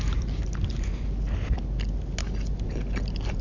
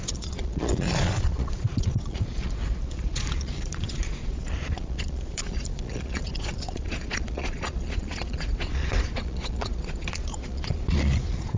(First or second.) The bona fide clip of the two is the first